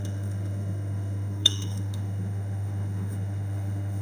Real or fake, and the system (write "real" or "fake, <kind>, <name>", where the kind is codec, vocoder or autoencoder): fake, autoencoder, DAC-VAE